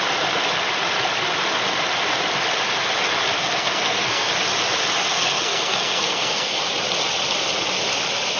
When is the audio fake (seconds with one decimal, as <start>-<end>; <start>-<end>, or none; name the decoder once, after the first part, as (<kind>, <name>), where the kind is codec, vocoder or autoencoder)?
3.4-4.3 (codec, SNAC); 5.1-6.6